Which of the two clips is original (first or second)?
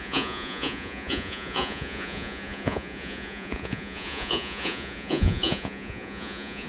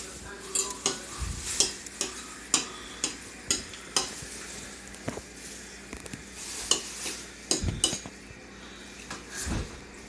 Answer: second